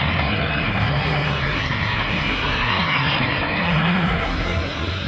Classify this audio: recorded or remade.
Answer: remade